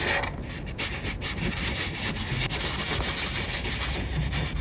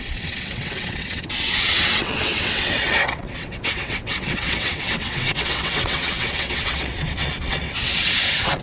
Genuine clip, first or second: first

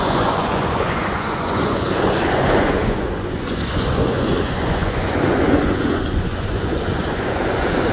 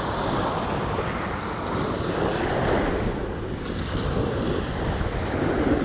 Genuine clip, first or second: second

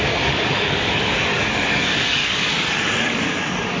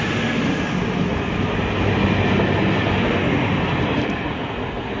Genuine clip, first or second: second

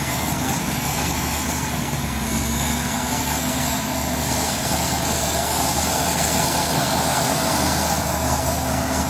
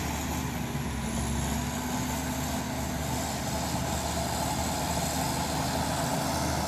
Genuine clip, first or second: second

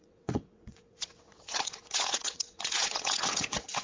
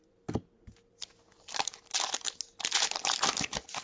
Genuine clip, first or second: second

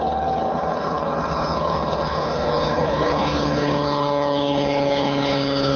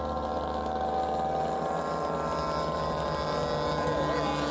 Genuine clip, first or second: second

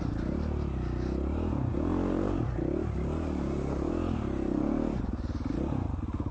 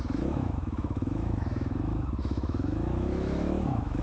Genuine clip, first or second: first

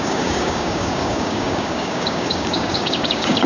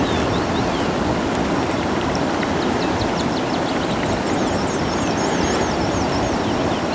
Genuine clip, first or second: second